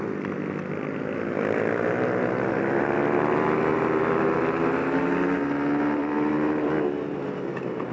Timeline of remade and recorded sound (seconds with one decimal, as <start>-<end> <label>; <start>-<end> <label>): 0.0-7.9 recorded